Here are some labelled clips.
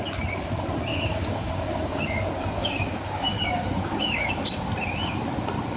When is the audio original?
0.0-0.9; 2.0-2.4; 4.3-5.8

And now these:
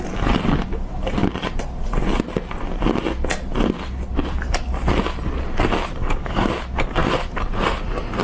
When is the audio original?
0.0-6.0; 6.5-8.2

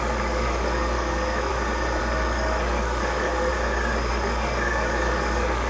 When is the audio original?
1.5-2.0; 3.5-4.1

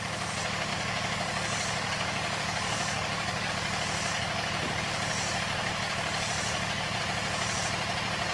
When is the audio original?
0.0-0.7; 3.5-4.1; 7.0-8.3

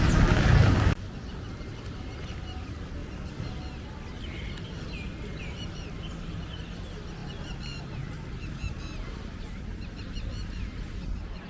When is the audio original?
0.0-11.5

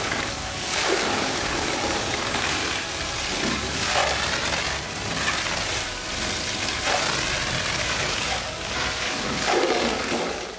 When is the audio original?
2.6-3.5; 4.0-7.8

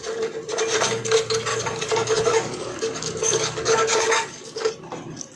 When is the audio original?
0.0-1.5; 4.7-5.4

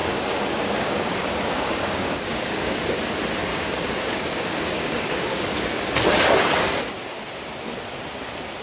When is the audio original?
2.8-3.5; 5.8-8.6